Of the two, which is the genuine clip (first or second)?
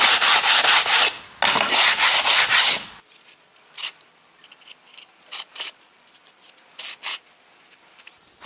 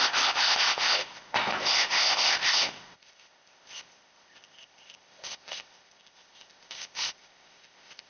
first